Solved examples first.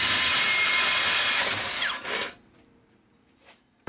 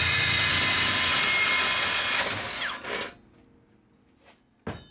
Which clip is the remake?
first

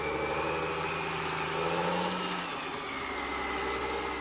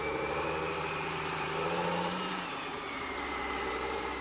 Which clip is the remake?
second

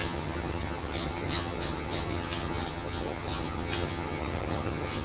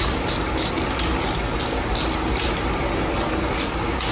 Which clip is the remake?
first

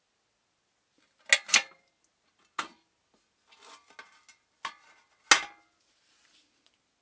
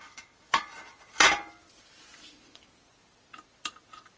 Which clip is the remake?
second